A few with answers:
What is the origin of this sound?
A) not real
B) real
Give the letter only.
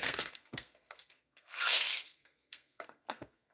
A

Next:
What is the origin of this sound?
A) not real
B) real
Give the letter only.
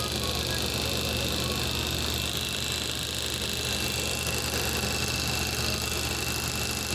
B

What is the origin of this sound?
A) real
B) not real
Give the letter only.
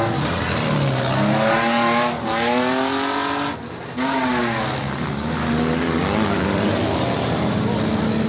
A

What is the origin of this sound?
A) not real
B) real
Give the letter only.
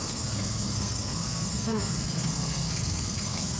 A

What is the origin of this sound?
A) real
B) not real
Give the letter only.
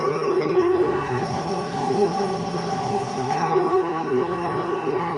B